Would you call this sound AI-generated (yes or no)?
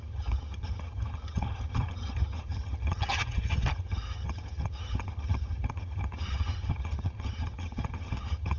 yes